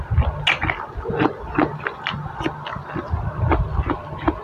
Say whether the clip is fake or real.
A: real